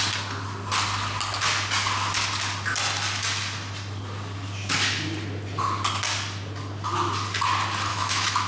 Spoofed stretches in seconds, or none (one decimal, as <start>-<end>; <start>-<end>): 7.9-8.5